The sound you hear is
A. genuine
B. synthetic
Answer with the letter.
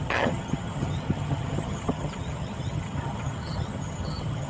B